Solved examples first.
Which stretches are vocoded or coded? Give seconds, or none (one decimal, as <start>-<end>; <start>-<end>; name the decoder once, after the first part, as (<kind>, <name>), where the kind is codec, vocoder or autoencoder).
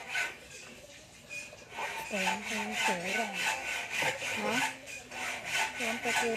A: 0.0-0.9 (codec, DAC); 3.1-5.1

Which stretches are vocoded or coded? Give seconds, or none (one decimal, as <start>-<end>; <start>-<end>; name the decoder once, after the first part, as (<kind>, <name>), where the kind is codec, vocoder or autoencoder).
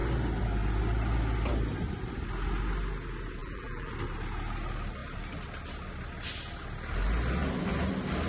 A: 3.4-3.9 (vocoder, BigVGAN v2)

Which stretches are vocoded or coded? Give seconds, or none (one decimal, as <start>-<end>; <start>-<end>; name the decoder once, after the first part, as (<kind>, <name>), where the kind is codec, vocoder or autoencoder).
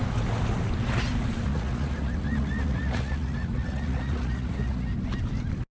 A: 1.5-4.9 (vocoder, Vocos)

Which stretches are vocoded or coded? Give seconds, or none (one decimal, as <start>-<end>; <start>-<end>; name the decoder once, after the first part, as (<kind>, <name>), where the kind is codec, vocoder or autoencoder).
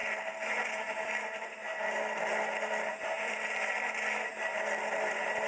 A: none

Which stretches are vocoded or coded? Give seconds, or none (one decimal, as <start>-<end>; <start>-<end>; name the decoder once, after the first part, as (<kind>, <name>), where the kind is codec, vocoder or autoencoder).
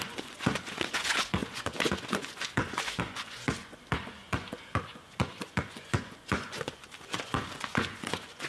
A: 0.0-8.5 (vocoder, Vocos)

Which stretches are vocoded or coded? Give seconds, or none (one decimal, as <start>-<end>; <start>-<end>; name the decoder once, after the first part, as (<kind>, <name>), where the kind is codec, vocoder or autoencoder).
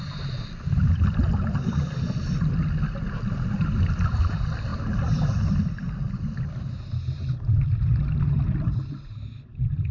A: none